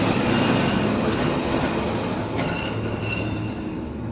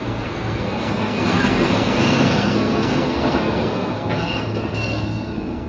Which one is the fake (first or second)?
second